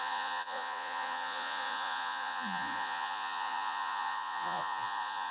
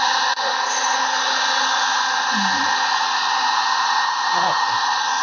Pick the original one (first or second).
second